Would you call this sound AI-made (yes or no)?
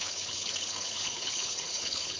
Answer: yes